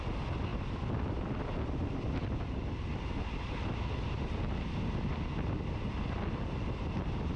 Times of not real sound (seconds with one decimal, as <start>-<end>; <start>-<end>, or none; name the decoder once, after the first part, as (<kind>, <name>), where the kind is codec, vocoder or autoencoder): none